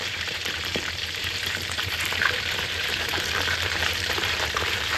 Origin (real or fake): fake